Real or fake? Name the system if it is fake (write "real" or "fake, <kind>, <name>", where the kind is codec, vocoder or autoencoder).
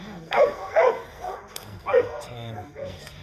fake, codec, SNAC